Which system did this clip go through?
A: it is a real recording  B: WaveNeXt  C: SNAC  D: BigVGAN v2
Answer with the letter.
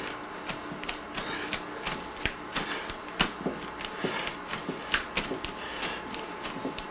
A